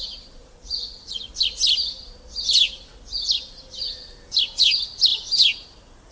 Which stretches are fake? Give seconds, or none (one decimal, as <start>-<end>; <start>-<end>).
0.4-1.3